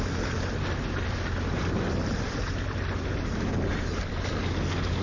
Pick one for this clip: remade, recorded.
recorded